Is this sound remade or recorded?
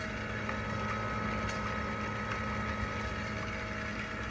recorded